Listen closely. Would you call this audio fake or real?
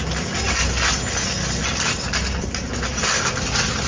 real